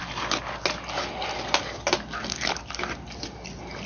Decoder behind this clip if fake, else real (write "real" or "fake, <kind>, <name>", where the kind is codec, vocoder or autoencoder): real